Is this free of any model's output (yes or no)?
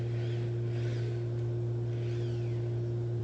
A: yes